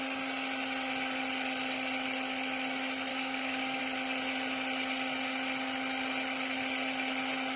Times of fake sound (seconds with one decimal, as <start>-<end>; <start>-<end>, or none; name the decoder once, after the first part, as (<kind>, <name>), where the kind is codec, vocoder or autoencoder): 3.1-3.8 (codec, DAC)